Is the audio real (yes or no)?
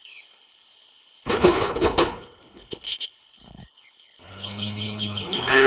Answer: no